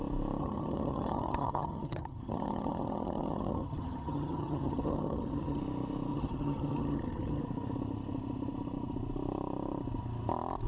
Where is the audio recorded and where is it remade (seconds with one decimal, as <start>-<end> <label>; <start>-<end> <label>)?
0.0-0.4 recorded; 0.4-5.6 remade; 5.6-6.1 recorded; 6.1-7.4 remade; 7.4-10.7 recorded